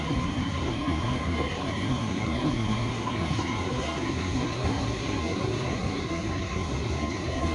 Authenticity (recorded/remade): remade